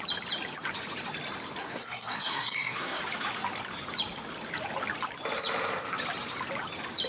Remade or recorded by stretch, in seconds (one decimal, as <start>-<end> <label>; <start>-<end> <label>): 0.0-1.6 recorded; 1.6-3.0 remade; 3.0-7.1 recorded